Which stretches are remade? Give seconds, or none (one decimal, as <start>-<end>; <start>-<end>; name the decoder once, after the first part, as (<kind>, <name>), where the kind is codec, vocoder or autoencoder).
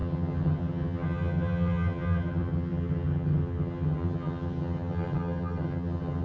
0.0-6.2 (vocoder, HiFi-GAN)